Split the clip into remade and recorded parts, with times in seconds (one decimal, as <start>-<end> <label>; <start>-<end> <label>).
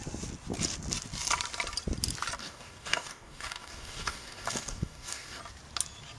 0.0-2.4 recorded; 2.4-5.4 remade; 5.4-6.2 recorded